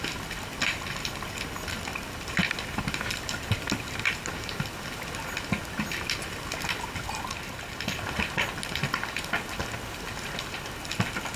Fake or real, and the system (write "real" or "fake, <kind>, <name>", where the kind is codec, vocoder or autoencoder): real